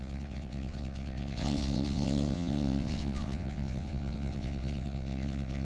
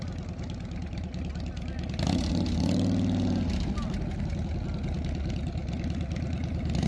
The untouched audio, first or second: second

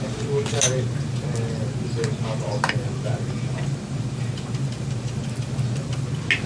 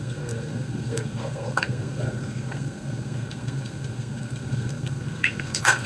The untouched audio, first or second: first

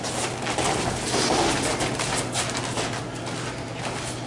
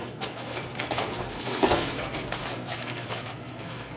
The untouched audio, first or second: first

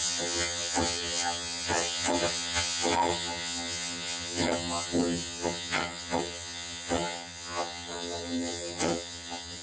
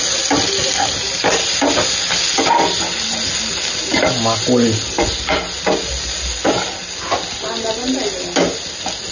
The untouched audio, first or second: second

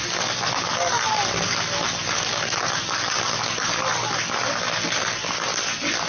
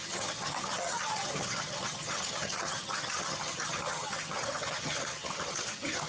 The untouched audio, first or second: first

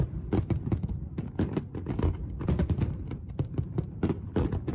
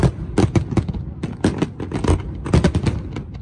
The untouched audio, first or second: second